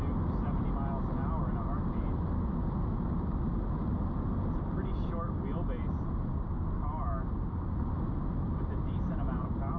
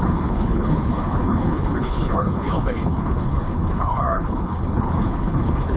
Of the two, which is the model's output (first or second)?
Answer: second